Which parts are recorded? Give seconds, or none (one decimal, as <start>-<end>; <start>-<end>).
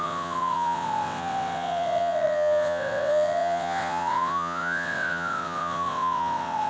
none